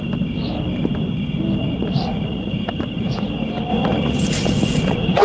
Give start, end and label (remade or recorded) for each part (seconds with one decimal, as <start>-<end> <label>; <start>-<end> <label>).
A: 0.0-1.6 recorded; 1.6-3.3 remade; 3.3-3.7 recorded; 3.7-5.2 remade